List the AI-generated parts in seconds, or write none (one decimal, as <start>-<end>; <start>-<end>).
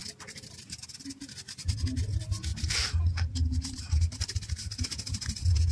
0.0-0.8; 2.5-4.8